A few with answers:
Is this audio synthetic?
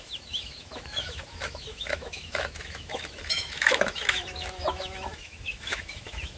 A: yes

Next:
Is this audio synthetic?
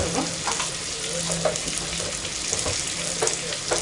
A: no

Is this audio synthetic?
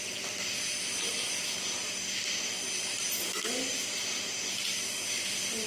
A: no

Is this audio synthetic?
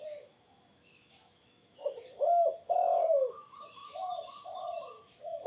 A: yes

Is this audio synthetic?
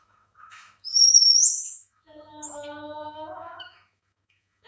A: yes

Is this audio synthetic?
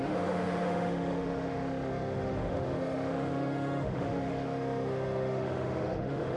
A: yes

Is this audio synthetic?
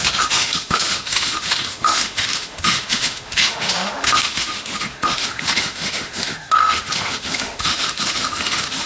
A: yes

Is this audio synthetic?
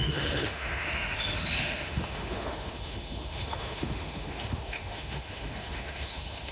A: yes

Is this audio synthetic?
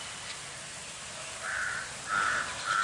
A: no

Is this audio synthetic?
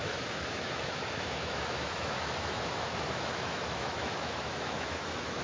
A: yes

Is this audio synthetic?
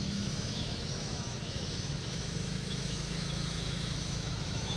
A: yes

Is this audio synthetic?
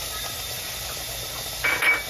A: no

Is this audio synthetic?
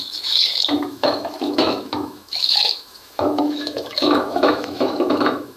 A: yes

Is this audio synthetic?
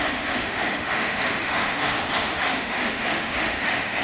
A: yes